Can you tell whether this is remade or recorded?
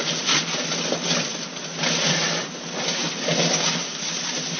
recorded